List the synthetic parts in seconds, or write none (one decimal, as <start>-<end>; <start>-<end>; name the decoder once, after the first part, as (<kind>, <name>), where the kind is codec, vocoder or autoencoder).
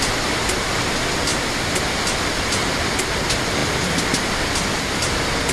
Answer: none